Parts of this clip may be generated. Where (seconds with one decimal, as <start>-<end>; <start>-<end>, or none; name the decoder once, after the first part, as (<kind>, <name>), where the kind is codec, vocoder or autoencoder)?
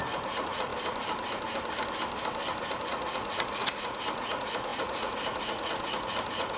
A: 0.0-0.7 (vocoder, Vocos); 2.9-6.6